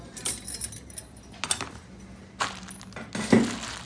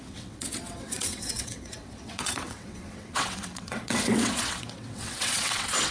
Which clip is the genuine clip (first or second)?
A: first